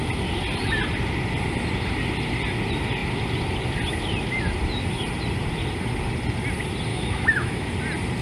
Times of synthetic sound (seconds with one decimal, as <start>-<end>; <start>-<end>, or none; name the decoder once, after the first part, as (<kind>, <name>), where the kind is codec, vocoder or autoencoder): 6.9-7.7 (autoencoder, DAC-VAE)